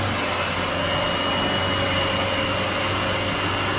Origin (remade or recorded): recorded